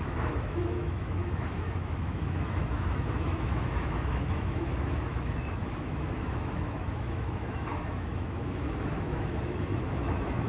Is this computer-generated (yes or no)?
yes